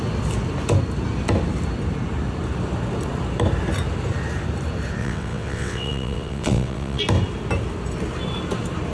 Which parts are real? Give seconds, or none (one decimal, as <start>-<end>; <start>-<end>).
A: 0.0-5.0; 7.0-8.9